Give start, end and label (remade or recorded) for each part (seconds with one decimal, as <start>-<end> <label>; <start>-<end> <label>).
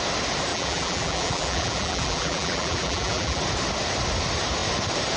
0.0-0.5 recorded; 0.5-3.4 remade; 3.4-5.2 recorded